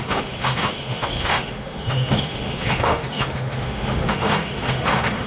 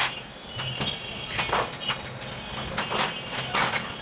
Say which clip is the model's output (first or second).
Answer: first